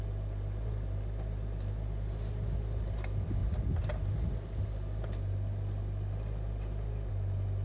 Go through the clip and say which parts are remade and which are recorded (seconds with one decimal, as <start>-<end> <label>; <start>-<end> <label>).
0.0-7.6 recorded